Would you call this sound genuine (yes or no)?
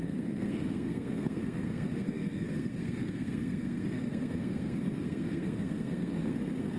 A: no